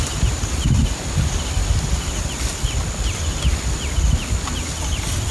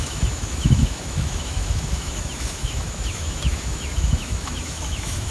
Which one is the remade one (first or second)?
second